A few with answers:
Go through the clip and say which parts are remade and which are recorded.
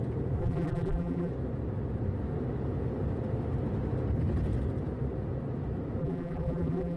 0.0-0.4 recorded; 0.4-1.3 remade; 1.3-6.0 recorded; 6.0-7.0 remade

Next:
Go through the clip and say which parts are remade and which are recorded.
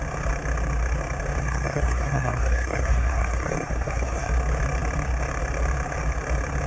0.0-1.4 recorded; 1.4-4.3 remade; 4.3-6.7 recorded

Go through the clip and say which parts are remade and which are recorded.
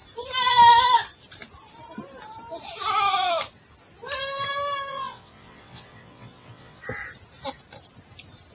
0.0-4.9 recorded; 4.9-6.8 remade; 6.8-8.5 recorded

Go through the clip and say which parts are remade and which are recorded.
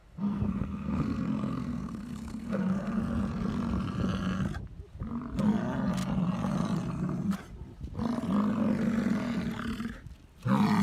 0.0-3.0 remade; 3.0-10.8 recorded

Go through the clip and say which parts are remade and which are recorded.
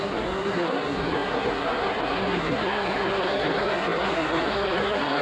0.0-5.2 remade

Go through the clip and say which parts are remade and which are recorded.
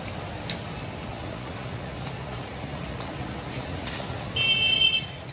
0.0-1.1 recorded; 1.1-4.3 remade; 4.3-4.7 recorded; 4.7-5.3 remade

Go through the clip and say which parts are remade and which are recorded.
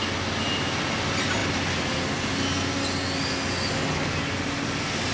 0.0-5.1 recorded